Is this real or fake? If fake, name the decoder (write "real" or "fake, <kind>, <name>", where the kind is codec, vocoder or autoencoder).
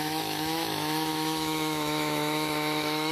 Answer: fake, autoencoder, DAC-VAE